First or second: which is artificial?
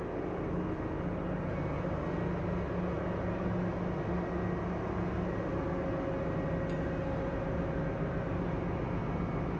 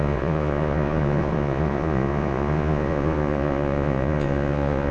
second